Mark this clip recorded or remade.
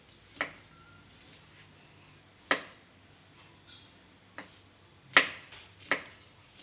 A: recorded